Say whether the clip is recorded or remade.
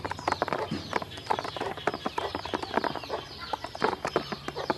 remade